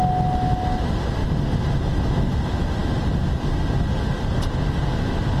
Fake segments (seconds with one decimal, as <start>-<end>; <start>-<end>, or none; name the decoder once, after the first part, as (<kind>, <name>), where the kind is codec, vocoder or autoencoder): none